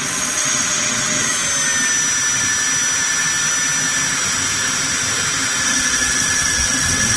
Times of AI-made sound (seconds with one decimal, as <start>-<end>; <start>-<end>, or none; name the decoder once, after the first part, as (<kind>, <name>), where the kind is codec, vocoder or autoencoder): 0.0-1.3 (vocoder, WaveNeXt); 5.6-7.2